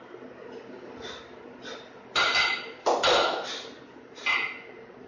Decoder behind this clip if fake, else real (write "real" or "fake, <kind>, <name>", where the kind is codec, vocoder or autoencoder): real